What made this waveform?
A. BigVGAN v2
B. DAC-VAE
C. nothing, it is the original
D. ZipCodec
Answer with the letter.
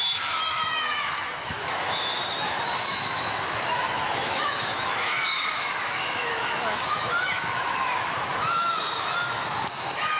B